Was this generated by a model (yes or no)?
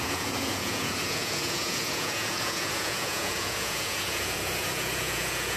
yes